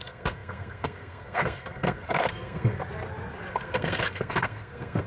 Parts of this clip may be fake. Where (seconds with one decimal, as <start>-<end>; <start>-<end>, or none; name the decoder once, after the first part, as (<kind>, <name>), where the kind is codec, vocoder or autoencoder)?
0.0-2.8 (codec, SNAC); 3.5-5.1